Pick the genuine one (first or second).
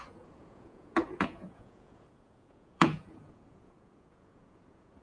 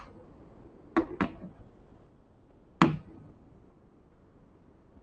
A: second